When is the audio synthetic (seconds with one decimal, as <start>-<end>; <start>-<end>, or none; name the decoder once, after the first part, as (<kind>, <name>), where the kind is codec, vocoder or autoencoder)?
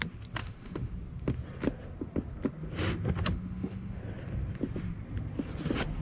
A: 0.4-0.9 (autoencoder, DAC-VAE); 3.3-4.0